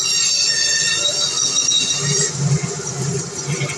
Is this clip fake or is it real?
real